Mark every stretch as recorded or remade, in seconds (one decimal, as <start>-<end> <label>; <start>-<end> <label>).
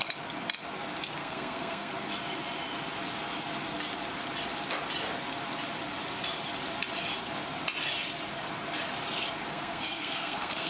0.0-1.2 recorded; 1.2-1.9 remade; 1.9-9.5 recorded; 9.5-10.7 remade